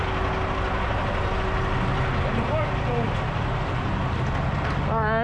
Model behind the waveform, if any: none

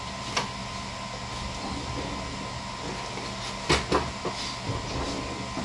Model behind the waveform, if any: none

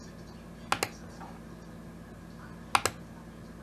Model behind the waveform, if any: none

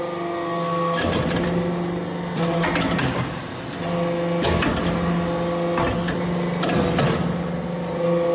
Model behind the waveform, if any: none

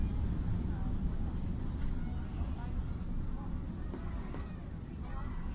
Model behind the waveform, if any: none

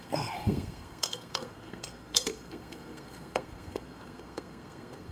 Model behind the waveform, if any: codec, SNAC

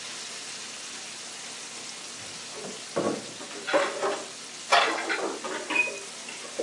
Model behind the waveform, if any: none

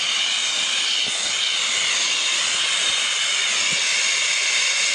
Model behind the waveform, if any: none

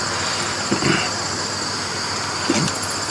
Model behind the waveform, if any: none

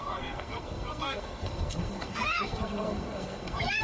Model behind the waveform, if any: codec, SNAC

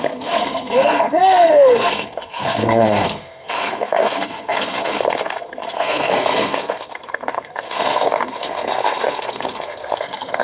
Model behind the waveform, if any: codec, SNAC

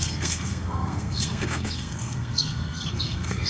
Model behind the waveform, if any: codec, SNAC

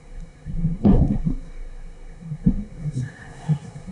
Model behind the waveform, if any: codec, SNAC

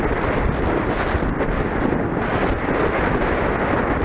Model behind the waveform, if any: none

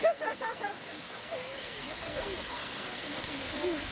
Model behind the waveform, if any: codec, SNAC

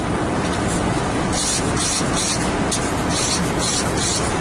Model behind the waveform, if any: none